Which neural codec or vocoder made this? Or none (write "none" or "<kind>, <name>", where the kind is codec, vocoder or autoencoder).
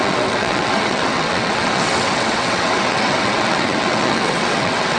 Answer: vocoder, WaveNeXt